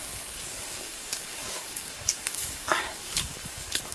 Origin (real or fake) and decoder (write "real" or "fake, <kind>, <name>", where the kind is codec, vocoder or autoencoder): fake, codec, DAC